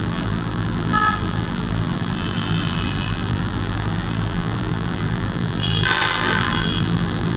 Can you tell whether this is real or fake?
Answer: fake